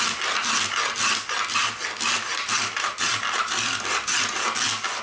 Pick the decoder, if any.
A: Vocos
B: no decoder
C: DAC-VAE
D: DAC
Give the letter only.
B